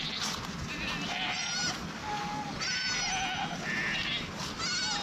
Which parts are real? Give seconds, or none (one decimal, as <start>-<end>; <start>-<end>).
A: 0.0-2.0; 2.6-5.0